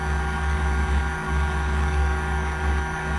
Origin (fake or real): fake